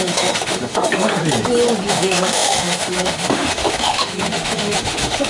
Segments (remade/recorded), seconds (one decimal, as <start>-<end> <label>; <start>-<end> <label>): 0.0-1.2 remade; 1.2-1.9 recorded; 1.9-5.3 remade